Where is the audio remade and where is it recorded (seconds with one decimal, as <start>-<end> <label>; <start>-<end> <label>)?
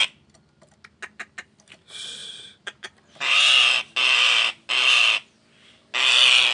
0.0-2.2 recorded; 2.2-3.4 remade; 3.4-6.5 recorded